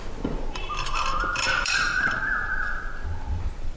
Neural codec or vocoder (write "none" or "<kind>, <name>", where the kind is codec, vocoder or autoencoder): none